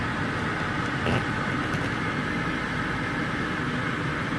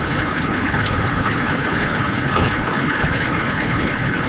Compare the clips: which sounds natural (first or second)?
first